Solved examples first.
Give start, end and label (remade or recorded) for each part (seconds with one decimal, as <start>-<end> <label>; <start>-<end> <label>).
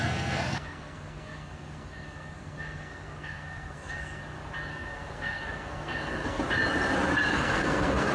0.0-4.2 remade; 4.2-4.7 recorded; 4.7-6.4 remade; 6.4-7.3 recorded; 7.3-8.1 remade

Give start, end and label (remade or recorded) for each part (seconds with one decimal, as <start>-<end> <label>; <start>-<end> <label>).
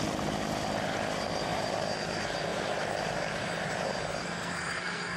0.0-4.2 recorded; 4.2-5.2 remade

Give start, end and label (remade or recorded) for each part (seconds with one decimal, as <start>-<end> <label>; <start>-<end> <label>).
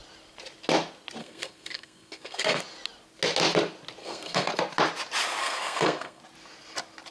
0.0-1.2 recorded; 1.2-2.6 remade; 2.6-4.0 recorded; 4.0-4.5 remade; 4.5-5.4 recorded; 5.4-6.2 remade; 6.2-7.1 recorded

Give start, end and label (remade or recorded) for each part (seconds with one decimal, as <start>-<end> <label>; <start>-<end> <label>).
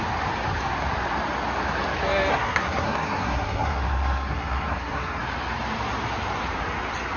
0.0-2.3 recorded; 2.3-5.2 remade; 5.2-7.2 recorded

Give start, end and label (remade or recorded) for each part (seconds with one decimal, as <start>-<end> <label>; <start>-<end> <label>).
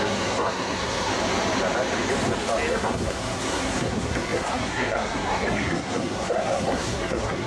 0.0-1.1 remade; 1.1-2.7 recorded; 2.7-7.5 remade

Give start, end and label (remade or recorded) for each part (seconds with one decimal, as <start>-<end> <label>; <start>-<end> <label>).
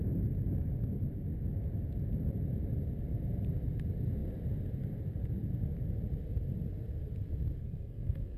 0.0-7.6 recorded; 7.6-8.4 remade